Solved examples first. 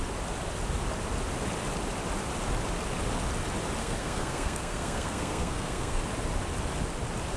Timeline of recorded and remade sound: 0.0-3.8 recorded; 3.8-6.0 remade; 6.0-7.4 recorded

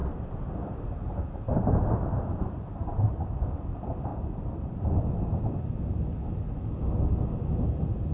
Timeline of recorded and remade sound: 0.0-3.4 remade; 3.4-4.1 recorded; 4.1-4.8 remade; 4.8-8.1 recorded

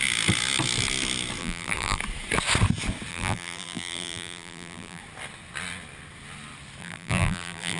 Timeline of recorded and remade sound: 0.0-1.4 recorded; 1.4-2.0 remade; 2.0-3.1 recorded; 3.1-5.0 remade; 5.0-6.8 recorded; 6.8-7.8 remade

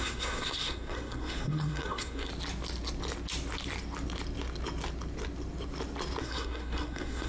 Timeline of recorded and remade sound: 0.0-2.3 remade; 2.3-6.2 recorded; 6.2-7.3 remade

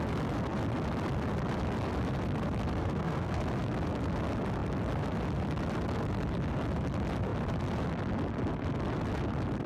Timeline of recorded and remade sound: 0.0-2.8 recorded; 2.8-3.4 remade; 3.4-9.7 recorded

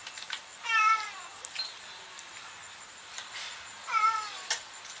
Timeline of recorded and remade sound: 0.0-5.0 recorded

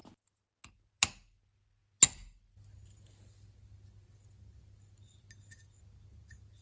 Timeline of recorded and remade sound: 0.0-6.6 recorded

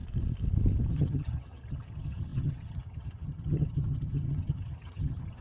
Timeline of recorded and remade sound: 0.0-0.9 recorded; 0.9-5.4 remade